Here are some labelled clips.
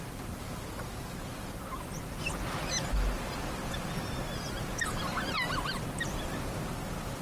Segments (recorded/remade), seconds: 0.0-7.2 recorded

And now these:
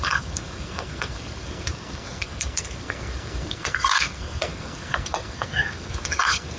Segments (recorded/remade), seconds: 0.0-6.6 remade

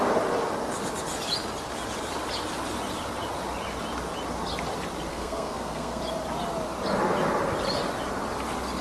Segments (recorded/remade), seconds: 0.0-5.1 recorded; 5.1-6.0 remade; 6.0-8.8 recorded

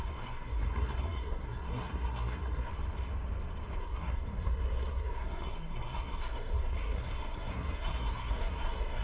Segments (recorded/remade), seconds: 0.0-2.7 remade; 2.7-3.8 recorded; 3.8-9.0 remade

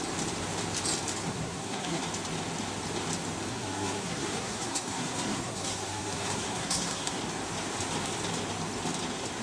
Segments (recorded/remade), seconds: 0.0-1.3 recorded; 1.3-2.0 remade; 2.0-3.5 recorded; 3.5-7.2 remade; 7.2-9.4 recorded

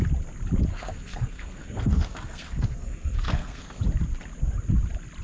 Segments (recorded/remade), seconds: 0.0-0.7 recorded; 0.7-3.8 remade; 3.8-5.2 recorded

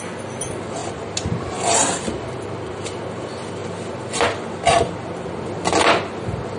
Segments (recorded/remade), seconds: 0.0-6.6 recorded